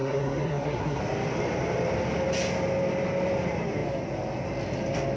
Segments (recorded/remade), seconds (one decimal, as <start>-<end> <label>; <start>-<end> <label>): 0.0-1.0 remade; 1.0-5.2 recorded